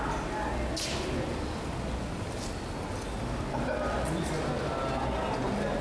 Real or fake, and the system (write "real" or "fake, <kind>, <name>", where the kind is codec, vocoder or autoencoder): real